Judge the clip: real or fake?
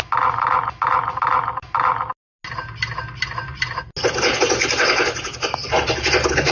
real